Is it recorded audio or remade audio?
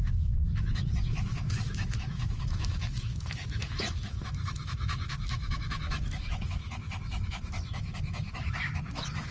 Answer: remade